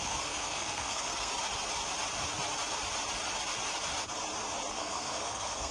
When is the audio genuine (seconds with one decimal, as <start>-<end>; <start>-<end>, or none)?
1.3-4.7